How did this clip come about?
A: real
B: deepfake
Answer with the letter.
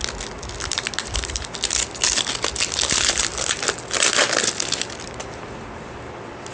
A